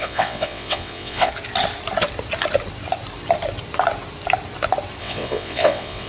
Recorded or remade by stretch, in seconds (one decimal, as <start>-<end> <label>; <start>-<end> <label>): 0.0-1.3 remade; 1.3-5.0 recorded; 5.0-6.1 remade